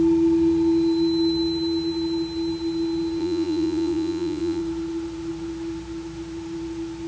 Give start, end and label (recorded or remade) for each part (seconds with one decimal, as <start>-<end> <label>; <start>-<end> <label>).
0.0-3.2 recorded; 3.2-4.6 remade; 4.6-7.1 recorded